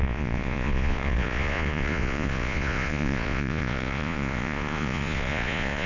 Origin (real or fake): fake